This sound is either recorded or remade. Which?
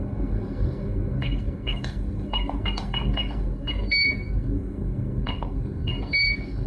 remade